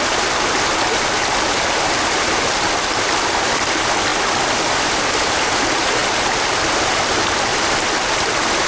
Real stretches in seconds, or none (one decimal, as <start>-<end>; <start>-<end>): 0.0-4.1; 4.9-7.5; 8.1-8.7